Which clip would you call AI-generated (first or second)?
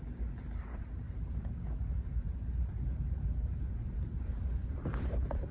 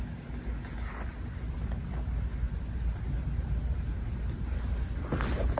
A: first